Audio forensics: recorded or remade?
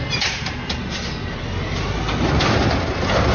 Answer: recorded